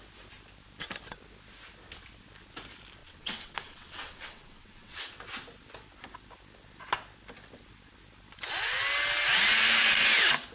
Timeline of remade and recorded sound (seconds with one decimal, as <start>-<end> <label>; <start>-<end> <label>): 0.0-3.0 recorded; 3.0-5.0 remade; 5.0-10.5 recorded